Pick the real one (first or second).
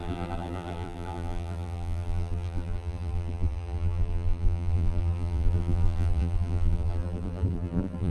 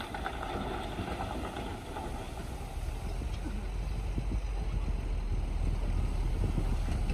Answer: second